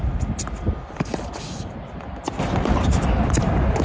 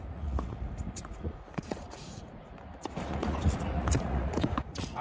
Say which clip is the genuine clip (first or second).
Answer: first